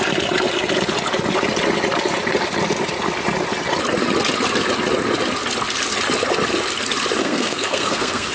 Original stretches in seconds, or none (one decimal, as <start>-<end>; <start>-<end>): 0.0-7.2